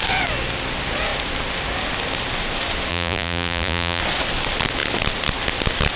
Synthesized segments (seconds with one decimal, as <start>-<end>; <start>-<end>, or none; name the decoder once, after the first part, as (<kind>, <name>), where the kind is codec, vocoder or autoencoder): 2.9-4.0 (vocoder, BigVGAN v2)

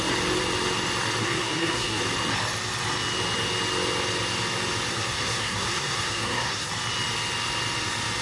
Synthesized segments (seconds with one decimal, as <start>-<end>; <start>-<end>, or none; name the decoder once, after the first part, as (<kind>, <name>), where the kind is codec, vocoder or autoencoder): 1.2-2.0 (codec, SNAC); 4.9-6.7